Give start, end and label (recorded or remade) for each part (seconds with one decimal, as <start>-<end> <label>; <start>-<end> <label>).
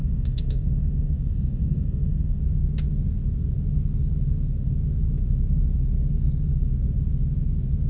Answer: 0.0-2.4 remade; 2.4-7.9 recorded